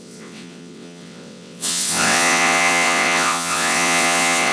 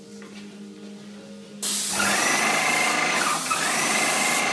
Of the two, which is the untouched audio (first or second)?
second